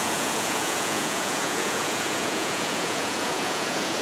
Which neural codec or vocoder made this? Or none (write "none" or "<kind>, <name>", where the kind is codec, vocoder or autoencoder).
vocoder, Vocos